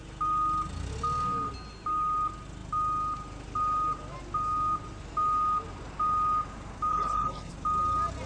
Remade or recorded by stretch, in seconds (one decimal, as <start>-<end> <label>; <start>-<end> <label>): 0.0-6.9 recorded; 6.9-7.5 remade; 7.5-8.3 recorded